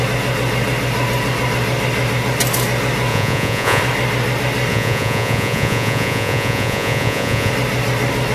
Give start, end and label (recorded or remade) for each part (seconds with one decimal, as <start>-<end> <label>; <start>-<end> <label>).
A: 0.0-3.1 recorded; 3.1-3.8 remade; 3.8-4.7 recorded; 4.7-7.5 remade; 7.5-8.3 recorded